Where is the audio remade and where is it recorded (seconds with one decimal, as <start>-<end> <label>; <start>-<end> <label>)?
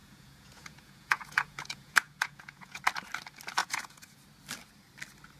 0.0-2.8 remade; 2.8-3.6 recorded; 3.6-4.2 remade; 4.2-5.4 recorded